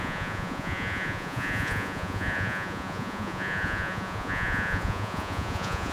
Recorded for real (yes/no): no